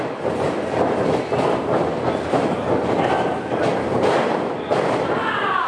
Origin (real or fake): real